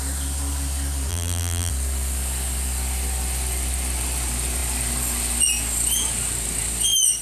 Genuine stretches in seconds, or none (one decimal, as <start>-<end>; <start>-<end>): 0.0-1.1; 1.7-7.2